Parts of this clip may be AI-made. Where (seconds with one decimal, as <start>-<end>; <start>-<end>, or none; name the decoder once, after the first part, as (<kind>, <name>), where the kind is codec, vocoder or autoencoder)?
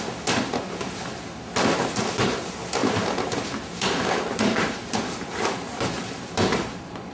2.8-7.1 (vocoder, BigVGAN v2)